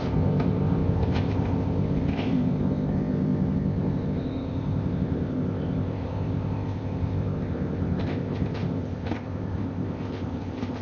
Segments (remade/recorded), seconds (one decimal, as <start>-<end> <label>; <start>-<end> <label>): 0.0-10.8 remade